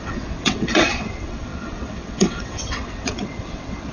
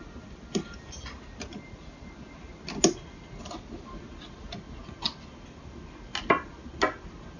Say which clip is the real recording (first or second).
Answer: second